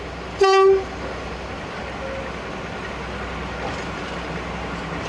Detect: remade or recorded recorded